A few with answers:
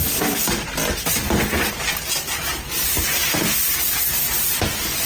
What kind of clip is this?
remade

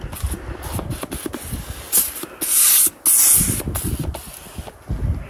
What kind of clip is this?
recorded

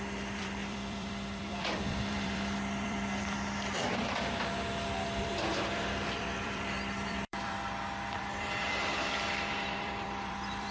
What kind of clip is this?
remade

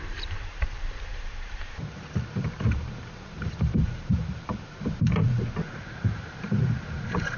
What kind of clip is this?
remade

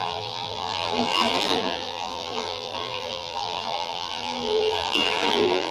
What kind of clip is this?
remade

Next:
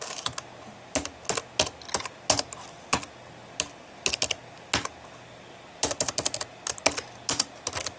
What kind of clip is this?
recorded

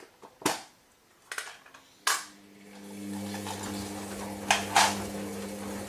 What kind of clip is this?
recorded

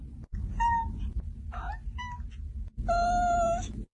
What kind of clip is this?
recorded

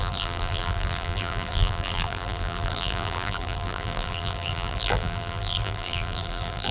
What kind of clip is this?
remade